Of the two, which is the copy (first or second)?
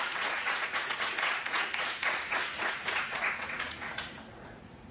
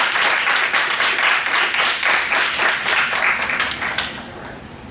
first